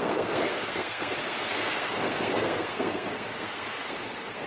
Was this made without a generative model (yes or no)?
no